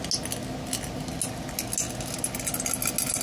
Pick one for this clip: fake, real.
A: real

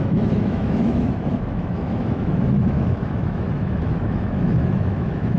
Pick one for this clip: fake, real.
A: fake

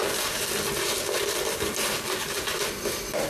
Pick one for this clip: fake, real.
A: real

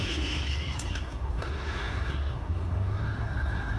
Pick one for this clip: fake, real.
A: fake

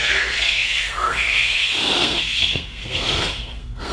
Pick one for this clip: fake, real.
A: fake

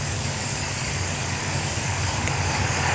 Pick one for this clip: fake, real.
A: fake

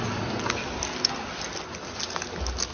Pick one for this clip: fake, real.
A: real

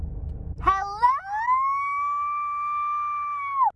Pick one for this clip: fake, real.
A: real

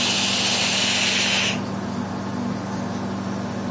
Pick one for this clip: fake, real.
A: real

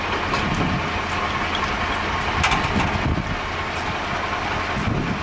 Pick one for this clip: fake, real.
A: real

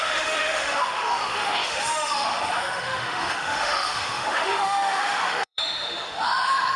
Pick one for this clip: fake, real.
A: fake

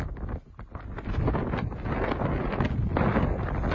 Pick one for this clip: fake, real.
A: real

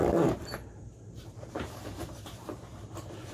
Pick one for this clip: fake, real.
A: fake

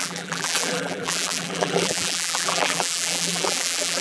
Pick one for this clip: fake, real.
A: fake